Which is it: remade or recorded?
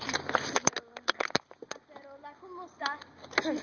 recorded